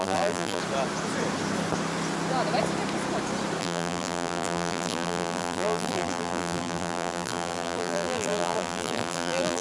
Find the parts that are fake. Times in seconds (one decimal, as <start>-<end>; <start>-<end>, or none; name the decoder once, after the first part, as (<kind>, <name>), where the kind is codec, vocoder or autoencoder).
0.0-0.6 (vocoder, BigVGAN v2); 3.6-9.6